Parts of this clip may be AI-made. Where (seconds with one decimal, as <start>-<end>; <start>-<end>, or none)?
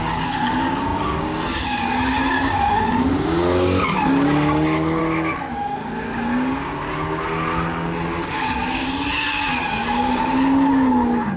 0.0-5.0; 5.5-6.7; 10.7-11.4